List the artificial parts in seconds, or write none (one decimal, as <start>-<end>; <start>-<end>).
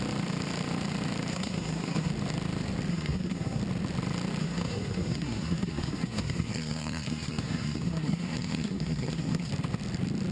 1.3-2.1; 2.9-3.6; 4.4-9.5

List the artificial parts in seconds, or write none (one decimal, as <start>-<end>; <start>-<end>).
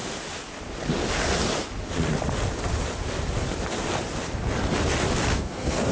5.3-5.9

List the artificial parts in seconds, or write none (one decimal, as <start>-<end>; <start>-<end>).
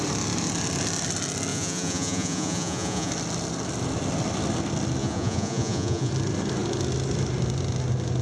1.5-3.1; 5.0-6.1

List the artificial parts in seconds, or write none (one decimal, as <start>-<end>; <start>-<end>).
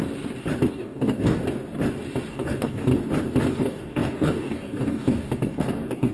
0.7-1.4; 2.3-2.9; 3.5-6.1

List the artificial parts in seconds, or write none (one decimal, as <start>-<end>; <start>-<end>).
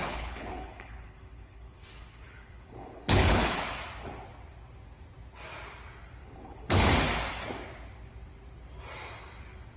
0.0-3.6; 6.2-6.9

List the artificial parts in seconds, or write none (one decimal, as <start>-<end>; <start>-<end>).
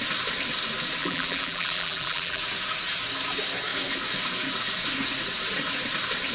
1.0-2.4